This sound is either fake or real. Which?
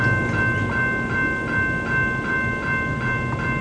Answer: real